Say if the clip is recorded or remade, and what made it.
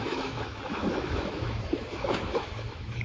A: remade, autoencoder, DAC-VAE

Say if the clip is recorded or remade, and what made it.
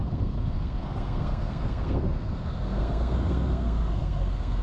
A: remade, codec, SNAC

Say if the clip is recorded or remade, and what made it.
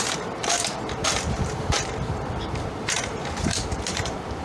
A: remade, vocoder, BigVGAN v2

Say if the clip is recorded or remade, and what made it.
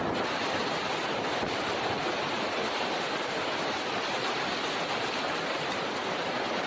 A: remade, vocoder, BigVGAN v2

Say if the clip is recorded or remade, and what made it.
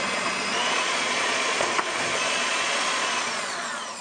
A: remade, vocoder, Vocos